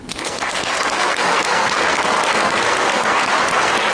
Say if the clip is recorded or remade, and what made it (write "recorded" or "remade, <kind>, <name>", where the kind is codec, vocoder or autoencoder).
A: remade, codec, SNAC